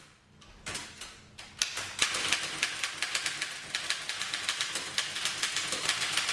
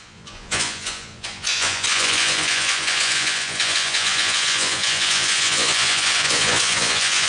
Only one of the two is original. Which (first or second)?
first